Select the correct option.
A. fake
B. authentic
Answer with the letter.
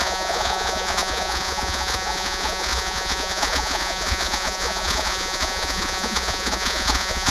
A